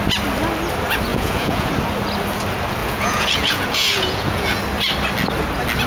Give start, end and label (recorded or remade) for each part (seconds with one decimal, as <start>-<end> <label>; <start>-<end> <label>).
0.0-1.1 recorded; 1.1-1.7 remade; 1.7-2.8 recorded; 2.8-4.6 remade; 4.6-5.9 recorded